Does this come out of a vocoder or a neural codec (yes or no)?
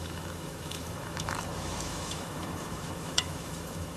yes